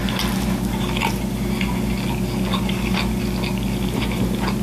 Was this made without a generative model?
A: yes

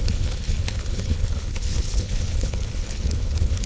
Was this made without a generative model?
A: no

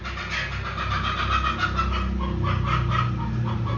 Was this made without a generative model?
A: yes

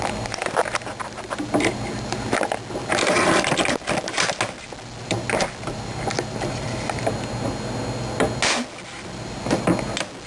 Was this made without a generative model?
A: yes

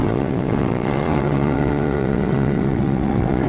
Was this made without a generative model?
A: no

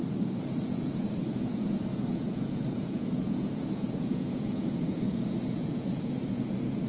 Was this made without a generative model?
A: no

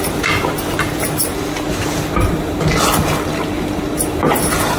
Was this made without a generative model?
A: yes